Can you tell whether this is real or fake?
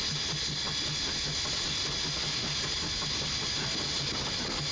real